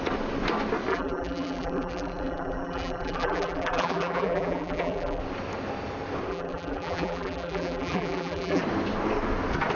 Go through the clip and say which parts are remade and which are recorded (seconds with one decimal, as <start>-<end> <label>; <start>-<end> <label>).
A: 0.0-0.9 recorded; 0.9-5.2 remade; 5.2-6.3 recorded; 6.3-8.6 remade; 8.6-9.8 recorded

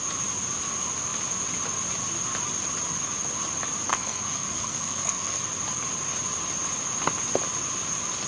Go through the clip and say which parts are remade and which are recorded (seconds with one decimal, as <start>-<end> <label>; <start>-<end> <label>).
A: 0.0-3.9 recorded; 3.9-5.4 remade; 5.4-8.3 recorded

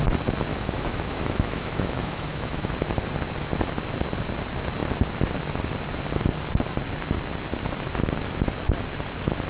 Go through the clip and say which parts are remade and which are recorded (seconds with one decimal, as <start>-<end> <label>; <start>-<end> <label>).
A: 0.0-0.5 recorded; 0.5-2.7 remade; 2.7-9.5 recorded

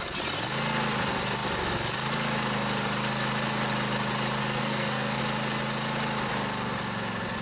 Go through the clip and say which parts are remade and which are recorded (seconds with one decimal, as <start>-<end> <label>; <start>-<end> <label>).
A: 0.0-4.4 recorded; 4.4-5.2 remade; 5.2-7.4 recorded

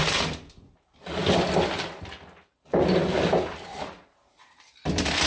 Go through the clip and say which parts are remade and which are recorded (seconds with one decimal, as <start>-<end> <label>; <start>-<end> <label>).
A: 0.0-5.3 recorded

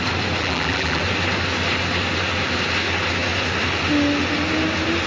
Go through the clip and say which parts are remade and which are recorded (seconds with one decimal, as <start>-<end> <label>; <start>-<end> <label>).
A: 0.0-0.4 recorded; 0.4-1.0 remade; 1.0-5.1 recorded